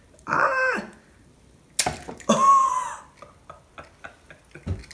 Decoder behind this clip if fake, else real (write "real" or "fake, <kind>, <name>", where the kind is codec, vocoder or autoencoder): real